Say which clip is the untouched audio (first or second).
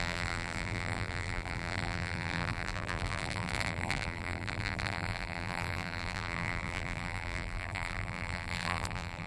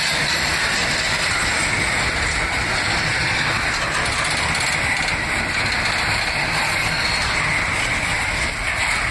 second